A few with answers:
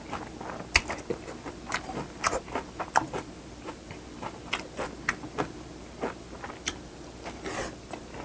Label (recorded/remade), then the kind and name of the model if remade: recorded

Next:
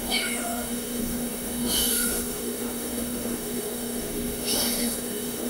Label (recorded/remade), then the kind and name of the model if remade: remade, autoencoder, DAC-VAE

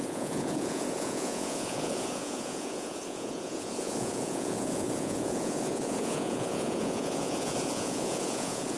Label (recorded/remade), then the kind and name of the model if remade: remade, vocoder, Vocos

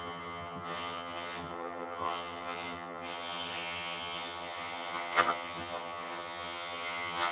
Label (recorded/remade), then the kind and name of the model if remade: remade, vocoder, HiFi-GAN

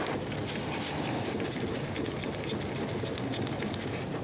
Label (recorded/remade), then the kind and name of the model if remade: recorded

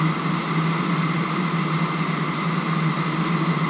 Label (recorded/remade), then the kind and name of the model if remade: recorded